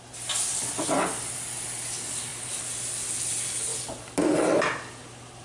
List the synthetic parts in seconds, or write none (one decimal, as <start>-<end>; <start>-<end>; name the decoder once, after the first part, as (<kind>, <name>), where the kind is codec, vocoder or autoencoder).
none